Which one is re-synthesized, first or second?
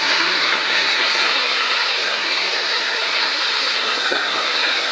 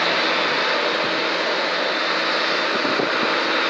first